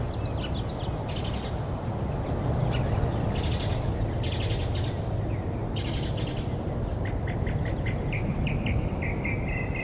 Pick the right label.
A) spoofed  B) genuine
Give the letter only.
B